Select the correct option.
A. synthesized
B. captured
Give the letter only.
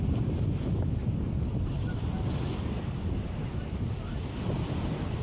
B